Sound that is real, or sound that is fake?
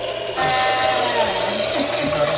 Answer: real